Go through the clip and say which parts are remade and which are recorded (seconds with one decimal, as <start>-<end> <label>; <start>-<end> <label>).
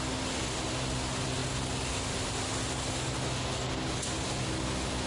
0.0-5.1 recorded